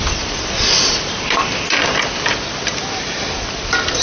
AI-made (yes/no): no